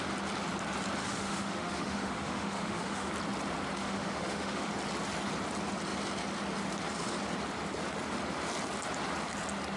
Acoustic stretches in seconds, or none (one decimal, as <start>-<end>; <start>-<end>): 0.0-1.0; 3.1-3.8; 4.7-9.8

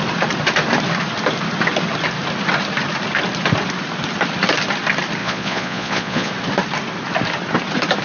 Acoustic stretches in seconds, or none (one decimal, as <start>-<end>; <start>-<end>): 0.0-5.2; 6.3-8.0